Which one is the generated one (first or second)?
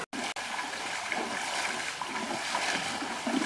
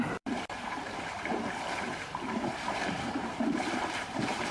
second